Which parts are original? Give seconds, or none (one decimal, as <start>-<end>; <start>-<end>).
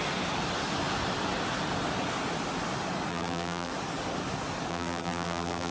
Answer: 0.0-3.1; 3.7-4.7